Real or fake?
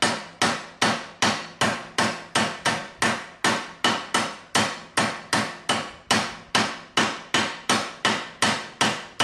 real